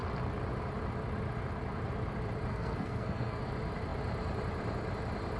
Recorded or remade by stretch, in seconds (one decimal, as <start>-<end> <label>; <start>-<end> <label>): 0.0-2.5 recorded; 2.5-3.4 remade; 3.4-5.4 recorded